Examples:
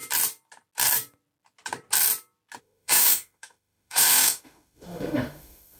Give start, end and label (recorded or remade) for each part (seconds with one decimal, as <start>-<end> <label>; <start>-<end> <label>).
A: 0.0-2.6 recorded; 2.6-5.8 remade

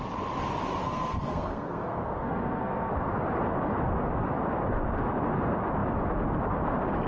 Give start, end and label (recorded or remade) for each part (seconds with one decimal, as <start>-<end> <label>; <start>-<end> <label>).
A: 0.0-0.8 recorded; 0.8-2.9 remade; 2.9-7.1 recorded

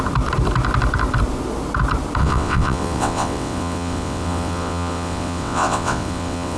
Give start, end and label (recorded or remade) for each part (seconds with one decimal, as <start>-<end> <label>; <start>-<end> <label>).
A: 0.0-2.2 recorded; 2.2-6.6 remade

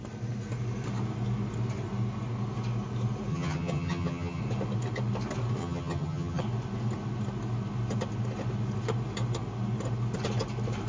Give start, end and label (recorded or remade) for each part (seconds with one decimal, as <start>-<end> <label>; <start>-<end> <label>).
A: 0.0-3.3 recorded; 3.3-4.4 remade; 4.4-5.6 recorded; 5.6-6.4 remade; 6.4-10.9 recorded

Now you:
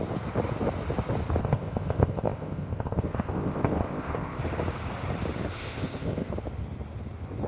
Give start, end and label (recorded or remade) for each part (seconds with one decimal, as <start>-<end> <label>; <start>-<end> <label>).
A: 0.0-1.4 recorded; 1.4-4.4 remade; 4.4-5.5 recorded; 5.5-6.3 remade; 6.3-7.5 recorded